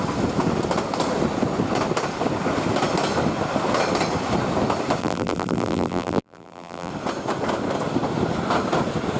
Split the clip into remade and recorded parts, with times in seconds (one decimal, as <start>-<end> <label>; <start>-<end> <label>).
0.0-5.0 recorded; 5.0-6.9 remade; 6.9-9.2 recorded